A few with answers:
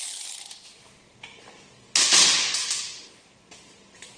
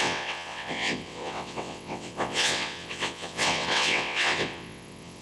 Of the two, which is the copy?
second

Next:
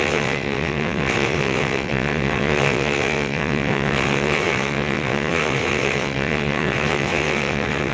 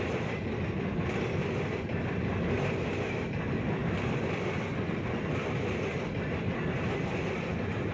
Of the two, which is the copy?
first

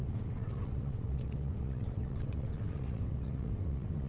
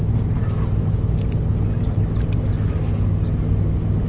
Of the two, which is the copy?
first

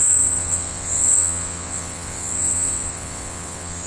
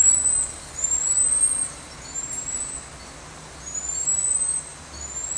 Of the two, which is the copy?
first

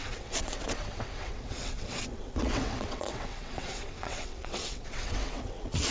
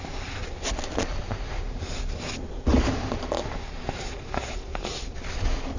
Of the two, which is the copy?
first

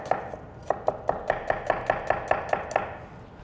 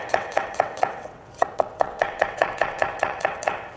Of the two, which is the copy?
second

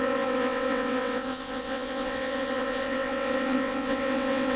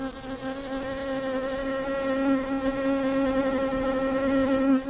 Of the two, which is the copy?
first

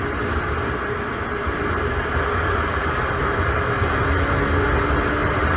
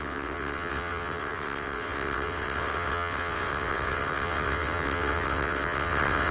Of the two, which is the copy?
second